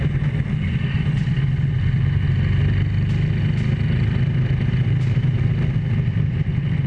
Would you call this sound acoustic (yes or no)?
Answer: yes